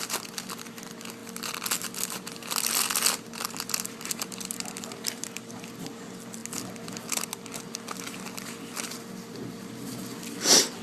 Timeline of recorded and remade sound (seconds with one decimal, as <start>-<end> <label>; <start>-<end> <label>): 0.0-10.8 recorded